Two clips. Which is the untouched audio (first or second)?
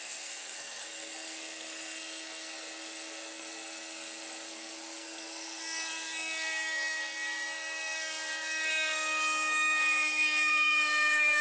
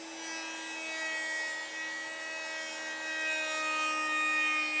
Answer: second